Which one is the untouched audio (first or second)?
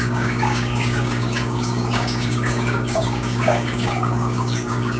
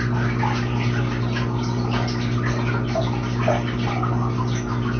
second